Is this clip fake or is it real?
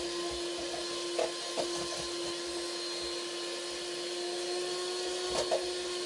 real